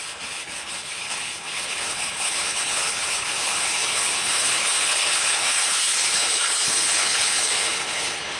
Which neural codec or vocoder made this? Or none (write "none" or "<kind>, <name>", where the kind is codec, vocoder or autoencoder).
codec, HILCodec